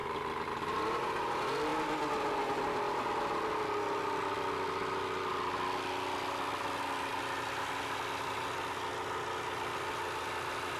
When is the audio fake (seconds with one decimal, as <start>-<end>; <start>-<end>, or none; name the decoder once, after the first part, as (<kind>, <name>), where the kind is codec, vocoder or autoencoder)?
none